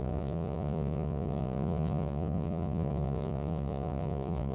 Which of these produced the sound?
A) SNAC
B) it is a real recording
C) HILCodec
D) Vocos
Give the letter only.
D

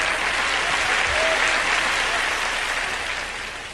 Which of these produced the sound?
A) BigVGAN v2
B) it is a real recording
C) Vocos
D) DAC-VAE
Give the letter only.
B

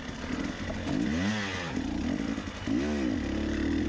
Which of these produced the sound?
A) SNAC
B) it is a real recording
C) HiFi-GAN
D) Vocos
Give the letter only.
B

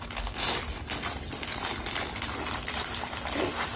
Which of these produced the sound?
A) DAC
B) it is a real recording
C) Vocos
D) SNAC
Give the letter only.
B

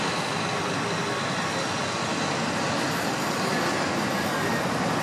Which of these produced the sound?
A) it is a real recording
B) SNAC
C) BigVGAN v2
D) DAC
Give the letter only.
A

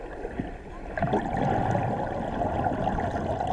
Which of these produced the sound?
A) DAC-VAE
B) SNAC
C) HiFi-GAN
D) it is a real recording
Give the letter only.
D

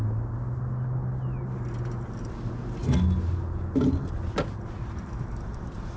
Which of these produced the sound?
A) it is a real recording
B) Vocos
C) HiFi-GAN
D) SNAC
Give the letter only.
A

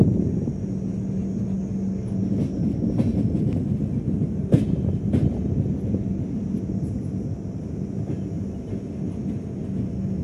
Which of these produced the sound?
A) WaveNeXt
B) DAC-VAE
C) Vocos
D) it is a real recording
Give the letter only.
D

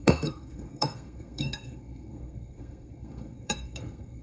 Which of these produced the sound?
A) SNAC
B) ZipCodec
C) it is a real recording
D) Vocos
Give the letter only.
A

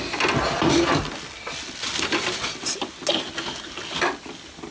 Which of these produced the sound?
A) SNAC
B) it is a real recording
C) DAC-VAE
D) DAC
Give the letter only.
B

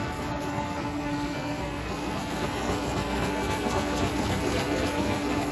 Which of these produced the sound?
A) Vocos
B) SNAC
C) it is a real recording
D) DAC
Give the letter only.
B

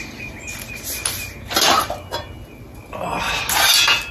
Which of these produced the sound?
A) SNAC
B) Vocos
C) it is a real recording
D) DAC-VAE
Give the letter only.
C